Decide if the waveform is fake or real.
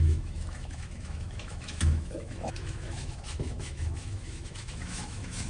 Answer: fake